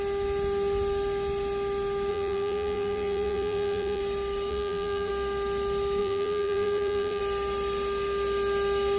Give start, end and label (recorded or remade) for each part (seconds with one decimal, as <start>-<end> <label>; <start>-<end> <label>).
0.0-2.1 recorded; 2.1-4.0 remade; 4.0-4.5 recorded; 4.5-5.1 remade; 5.1-6.0 recorded; 6.0-7.2 remade; 7.2-9.0 recorded